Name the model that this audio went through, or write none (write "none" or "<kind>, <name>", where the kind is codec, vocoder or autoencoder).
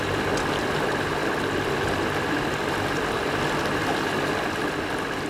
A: none